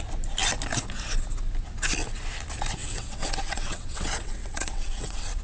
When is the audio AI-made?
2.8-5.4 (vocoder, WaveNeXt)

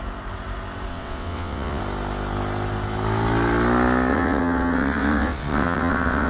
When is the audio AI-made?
0.9-1.8 (vocoder, WaveNeXt); 4.1-6.3

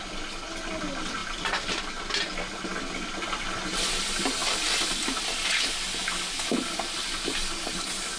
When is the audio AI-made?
none